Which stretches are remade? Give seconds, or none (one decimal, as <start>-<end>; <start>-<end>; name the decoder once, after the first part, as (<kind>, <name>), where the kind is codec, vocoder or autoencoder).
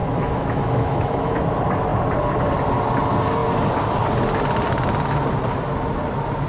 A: 0.0-1.4 (autoencoder, DAC-VAE)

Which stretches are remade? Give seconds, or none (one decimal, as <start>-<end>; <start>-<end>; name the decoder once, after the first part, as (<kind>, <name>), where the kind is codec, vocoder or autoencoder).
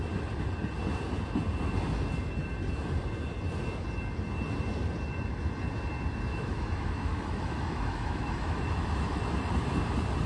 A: 6.3-9.2 (autoencoder, DAC-VAE)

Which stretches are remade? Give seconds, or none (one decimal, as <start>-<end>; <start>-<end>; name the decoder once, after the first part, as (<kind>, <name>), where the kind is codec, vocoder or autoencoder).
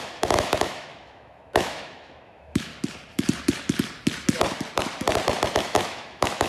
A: 0.0-2.7 (autoencoder, DAC-VAE); 5.5-6.5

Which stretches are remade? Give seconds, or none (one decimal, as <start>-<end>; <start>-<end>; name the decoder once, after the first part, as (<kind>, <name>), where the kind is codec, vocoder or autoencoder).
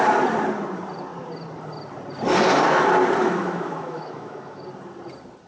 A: 3.2-4.6 (autoencoder, DAC-VAE)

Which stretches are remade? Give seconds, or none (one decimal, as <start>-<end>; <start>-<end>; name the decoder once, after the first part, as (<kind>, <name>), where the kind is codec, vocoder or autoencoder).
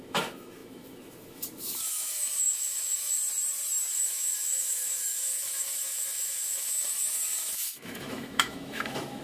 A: 0.0-3.2 (autoencoder, DAC-VAE); 3.9-9.2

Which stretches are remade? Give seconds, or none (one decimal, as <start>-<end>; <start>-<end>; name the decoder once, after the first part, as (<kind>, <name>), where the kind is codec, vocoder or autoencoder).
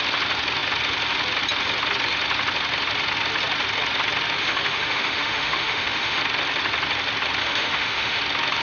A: 4.4-6.2 (autoencoder, DAC-VAE); 7.4-8.2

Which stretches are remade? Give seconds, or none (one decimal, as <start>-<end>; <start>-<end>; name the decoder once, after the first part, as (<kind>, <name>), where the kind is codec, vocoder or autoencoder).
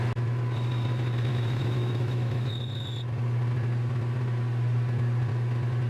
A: 1.3-2.5 (autoencoder, DAC-VAE)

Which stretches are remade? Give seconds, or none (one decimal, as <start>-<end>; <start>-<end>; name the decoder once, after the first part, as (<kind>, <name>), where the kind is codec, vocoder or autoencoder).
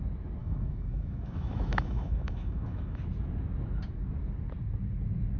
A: 0.4-3.0 (autoencoder, DAC-VAE)